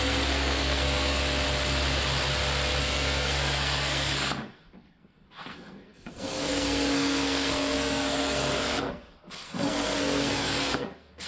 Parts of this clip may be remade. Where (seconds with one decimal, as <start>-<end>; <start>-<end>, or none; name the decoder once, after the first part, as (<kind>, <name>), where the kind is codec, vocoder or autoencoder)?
0.0-1.2 (codec, SNAC); 2.8-11.3